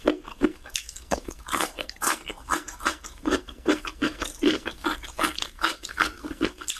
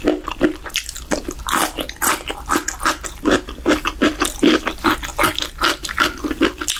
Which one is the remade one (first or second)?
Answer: first